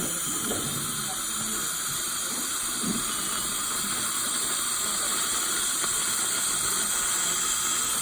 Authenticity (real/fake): real